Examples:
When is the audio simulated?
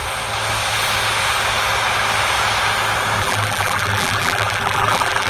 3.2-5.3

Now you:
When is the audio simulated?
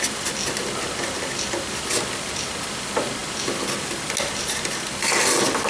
none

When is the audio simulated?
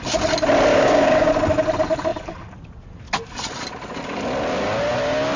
0.7-1.3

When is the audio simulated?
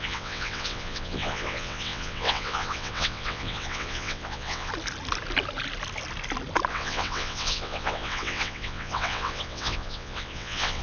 0.0-4.7; 6.7-10.8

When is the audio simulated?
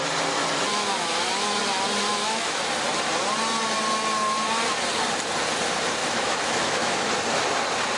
0.7-1.6; 2.1-2.7; 6.0-7.1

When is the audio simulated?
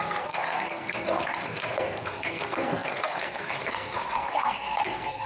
0.0-5.3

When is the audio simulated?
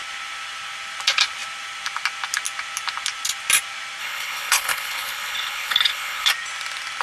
4.0-6.3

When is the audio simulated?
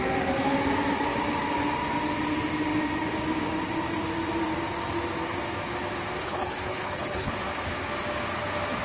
6.2-7.3